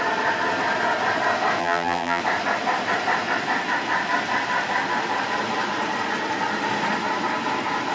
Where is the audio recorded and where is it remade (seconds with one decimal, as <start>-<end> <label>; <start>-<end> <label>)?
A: 0.0-1.6 recorded; 1.6-2.2 remade; 2.2-7.9 recorded